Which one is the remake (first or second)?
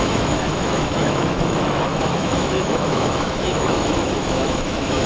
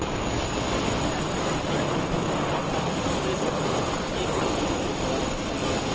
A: first